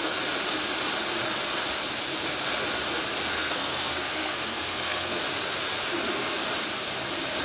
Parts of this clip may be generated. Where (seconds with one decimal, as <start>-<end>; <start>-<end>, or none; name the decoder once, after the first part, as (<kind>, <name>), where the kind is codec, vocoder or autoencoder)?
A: 3.3-5.2 (codec, SNAC)